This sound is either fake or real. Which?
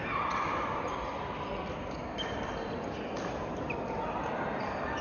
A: real